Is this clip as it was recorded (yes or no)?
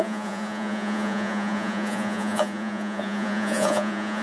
no